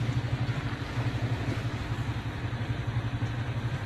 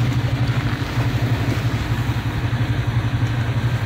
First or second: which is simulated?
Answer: first